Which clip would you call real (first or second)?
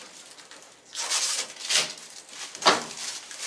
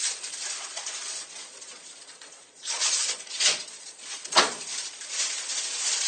first